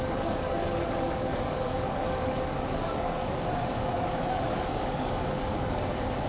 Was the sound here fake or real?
fake